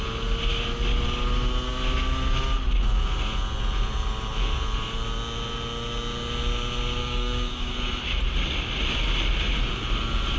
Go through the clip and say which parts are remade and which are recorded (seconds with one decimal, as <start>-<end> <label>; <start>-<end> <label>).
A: 0.0-7.0 recorded; 7.0-7.7 remade; 7.7-10.4 recorded